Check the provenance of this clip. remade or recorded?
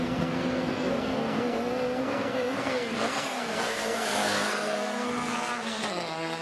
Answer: remade